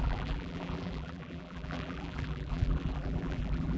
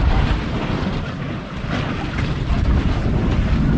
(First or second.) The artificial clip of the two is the first